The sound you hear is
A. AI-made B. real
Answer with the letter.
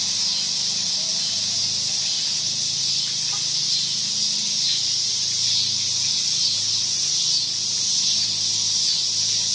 B